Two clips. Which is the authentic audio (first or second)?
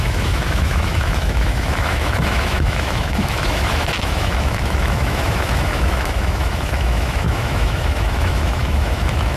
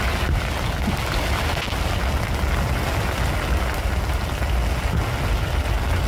second